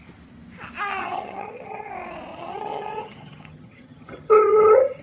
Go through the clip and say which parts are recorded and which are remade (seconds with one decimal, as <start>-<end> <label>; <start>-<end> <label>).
0.0-1.0 recorded; 1.0-1.9 remade; 1.9-2.3 recorded; 2.3-5.0 remade